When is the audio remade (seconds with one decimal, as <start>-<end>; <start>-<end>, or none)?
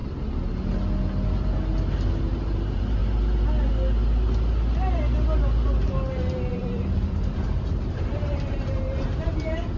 2.2-3.0; 6.5-9.8